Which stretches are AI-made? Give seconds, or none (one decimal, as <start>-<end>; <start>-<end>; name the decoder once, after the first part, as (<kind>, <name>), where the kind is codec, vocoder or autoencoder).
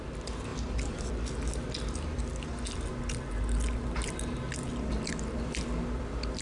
0.5-1.1 (vocoder, BigVGAN v2)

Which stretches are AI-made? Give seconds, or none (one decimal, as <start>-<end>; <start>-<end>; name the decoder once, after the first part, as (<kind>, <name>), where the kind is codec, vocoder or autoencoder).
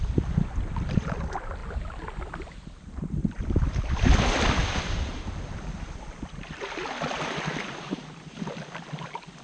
0.0-1.6 (vocoder, BigVGAN v2); 2.4-4.6; 5.8-9.4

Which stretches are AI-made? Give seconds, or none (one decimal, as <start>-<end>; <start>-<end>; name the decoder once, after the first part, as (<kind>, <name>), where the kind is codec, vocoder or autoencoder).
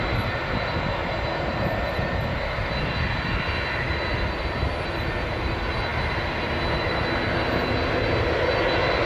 1.0-2.4 (vocoder, BigVGAN v2)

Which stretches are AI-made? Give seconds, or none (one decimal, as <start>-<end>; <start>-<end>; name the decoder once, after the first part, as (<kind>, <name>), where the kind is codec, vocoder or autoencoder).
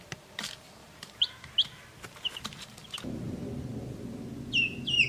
0.8-3.4 (vocoder, BigVGAN v2)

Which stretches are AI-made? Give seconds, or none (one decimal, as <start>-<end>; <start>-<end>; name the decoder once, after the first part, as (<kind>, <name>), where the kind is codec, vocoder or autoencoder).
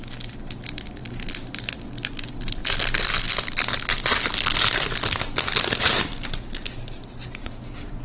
none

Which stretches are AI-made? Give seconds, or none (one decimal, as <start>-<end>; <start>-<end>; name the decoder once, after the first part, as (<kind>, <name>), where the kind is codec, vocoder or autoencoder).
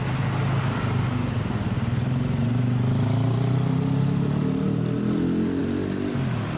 none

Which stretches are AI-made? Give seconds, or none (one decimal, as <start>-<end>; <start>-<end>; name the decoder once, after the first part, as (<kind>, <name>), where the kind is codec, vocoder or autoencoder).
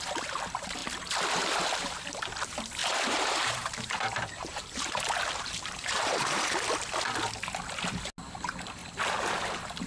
2.8-6.4 (vocoder, BigVGAN v2)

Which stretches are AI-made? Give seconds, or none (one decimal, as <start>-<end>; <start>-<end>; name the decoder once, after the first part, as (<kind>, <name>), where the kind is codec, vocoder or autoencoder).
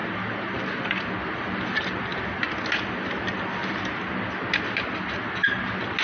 none